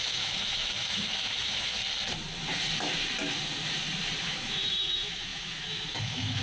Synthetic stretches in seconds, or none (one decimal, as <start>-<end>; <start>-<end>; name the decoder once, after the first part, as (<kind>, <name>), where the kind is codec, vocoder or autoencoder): 0.0-1.8 (autoencoder, DAC-VAE); 4.2-6.4